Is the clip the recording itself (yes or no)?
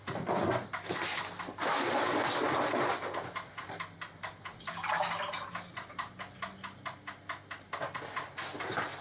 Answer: yes